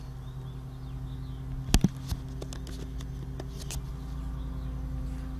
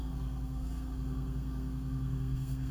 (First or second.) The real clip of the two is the first